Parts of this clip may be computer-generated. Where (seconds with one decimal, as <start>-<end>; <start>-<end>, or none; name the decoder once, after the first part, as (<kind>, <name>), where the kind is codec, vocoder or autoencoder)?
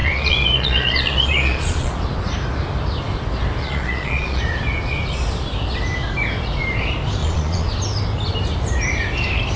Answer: 0.0-1.9 (vocoder, Vocos); 3.6-4.4; 7.2-7.7